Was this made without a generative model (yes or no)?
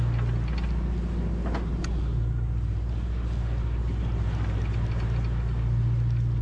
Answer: yes